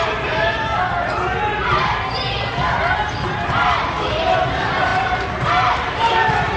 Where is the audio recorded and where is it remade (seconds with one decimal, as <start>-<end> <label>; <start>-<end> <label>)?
0.0-1.2 remade; 1.2-3.1 recorded; 3.1-6.6 remade